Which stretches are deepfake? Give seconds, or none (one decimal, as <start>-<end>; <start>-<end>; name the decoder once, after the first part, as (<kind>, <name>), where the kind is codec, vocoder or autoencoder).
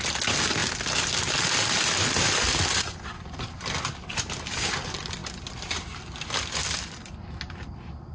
none